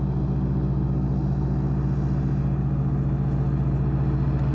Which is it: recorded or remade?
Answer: recorded